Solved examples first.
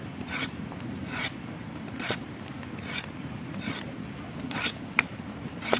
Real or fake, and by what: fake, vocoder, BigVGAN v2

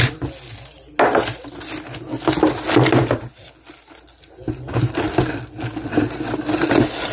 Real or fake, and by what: real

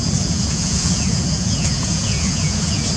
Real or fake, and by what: fake, vocoder, Vocos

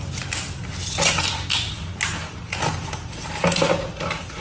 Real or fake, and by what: real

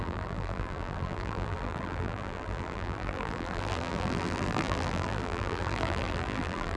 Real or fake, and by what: fake, vocoder, BigVGAN v2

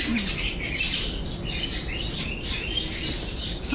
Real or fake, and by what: real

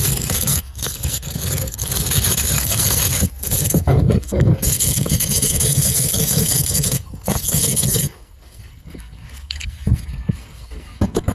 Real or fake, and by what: fake, codec, SNAC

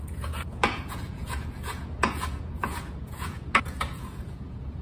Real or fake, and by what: fake, vocoder, Vocos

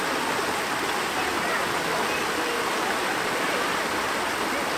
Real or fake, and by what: real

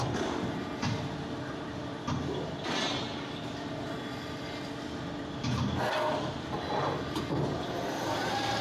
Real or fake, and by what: real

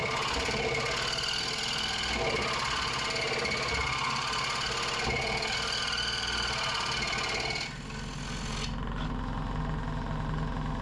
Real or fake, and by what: real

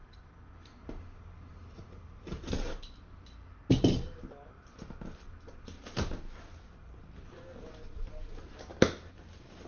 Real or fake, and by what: real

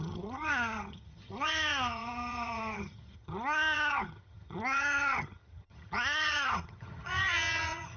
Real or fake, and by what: fake, vocoder, HiFi-GAN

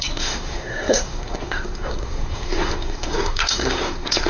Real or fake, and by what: fake, codec, SNAC